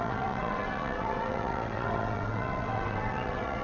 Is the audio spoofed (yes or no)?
yes